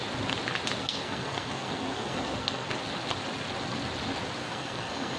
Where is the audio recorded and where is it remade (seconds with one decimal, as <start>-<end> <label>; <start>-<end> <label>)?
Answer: 0.0-0.8 recorded; 0.8-2.7 remade; 2.7-4.4 recorded; 4.4-5.2 remade